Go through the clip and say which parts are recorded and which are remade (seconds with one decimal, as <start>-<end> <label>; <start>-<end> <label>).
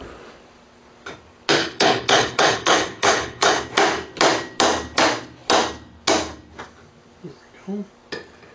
0.0-1.6 recorded; 1.6-3.6 remade; 3.6-8.5 recorded